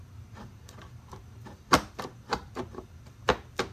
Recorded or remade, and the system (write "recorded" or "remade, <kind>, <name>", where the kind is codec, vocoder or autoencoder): remade, vocoder, BigVGAN v2